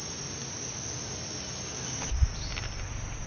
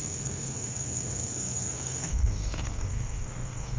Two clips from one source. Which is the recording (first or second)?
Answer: first